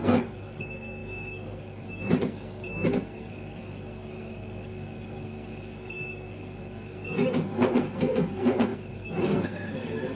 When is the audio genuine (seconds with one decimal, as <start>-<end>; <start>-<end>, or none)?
none